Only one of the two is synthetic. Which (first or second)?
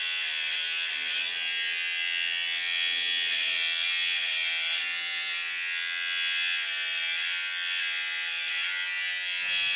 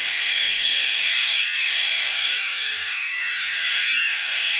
second